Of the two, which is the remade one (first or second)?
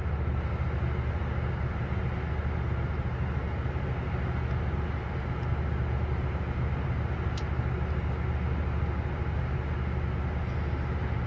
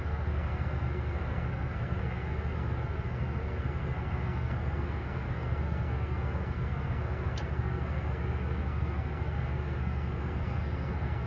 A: second